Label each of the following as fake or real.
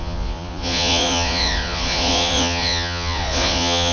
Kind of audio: fake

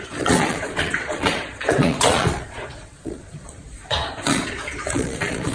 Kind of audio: fake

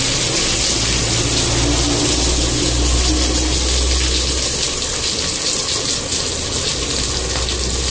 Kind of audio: real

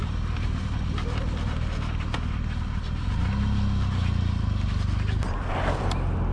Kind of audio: real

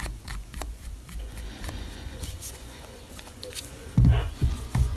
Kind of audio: fake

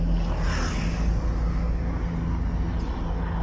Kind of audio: real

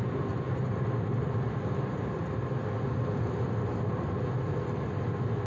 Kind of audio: real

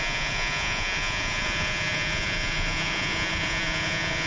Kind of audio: fake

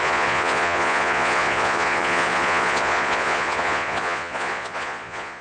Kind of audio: fake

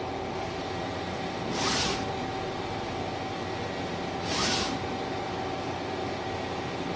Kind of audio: real